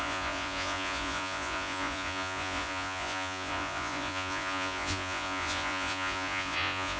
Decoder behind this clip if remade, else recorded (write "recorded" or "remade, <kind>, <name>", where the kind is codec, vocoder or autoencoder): remade, vocoder, Vocos